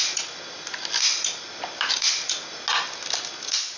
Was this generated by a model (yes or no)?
no